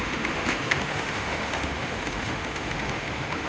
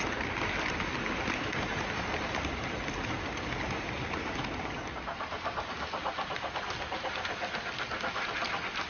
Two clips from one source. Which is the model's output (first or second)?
first